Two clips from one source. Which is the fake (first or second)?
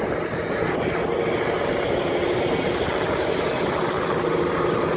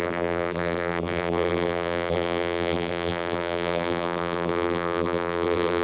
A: second